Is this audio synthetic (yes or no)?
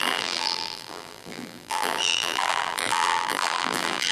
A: yes